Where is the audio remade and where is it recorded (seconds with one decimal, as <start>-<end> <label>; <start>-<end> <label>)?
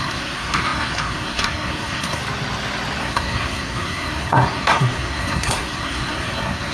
0.0-2.2 remade; 2.2-3.0 recorded; 3.0-6.7 remade